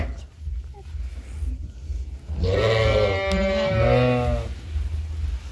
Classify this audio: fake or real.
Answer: real